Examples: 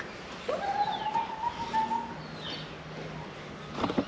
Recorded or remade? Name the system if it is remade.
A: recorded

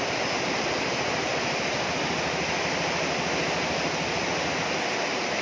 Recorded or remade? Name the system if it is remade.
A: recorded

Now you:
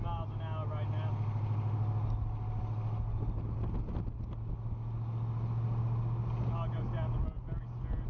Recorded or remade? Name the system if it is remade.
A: recorded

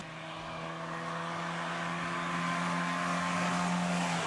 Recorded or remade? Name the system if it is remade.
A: remade, codec, DAC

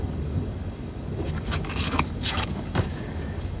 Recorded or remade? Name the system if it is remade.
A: remade, codec, DAC